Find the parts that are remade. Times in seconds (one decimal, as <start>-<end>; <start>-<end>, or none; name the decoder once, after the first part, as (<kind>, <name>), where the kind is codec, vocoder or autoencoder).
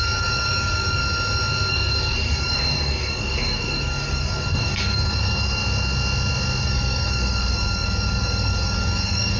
0.0-1.0 (codec, DAC); 1.7-5.6; 6.6-9.4